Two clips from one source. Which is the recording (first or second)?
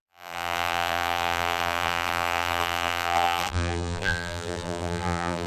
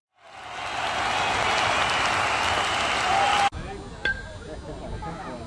second